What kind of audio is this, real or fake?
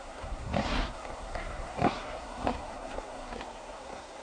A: fake